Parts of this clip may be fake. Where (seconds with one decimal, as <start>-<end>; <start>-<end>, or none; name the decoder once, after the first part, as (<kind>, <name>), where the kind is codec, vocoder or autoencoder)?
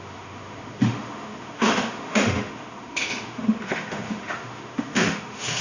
0.0-5.6 (autoencoder, DAC-VAE)